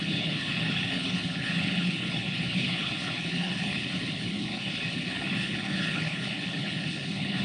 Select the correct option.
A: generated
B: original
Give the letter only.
A